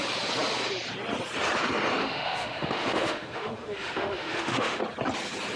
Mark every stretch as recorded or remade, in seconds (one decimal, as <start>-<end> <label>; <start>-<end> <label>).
0.0-2.0 recorded; 2.0-4.8 remade; 4.8-5.6 recorded